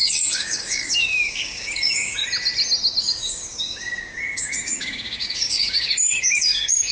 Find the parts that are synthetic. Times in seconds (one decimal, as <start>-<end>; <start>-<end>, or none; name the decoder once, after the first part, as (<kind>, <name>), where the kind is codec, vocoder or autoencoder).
0.0-2.2 (codec, DAC); 3.0-6.9